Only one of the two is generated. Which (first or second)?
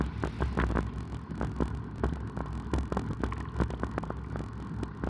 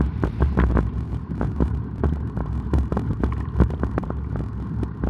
second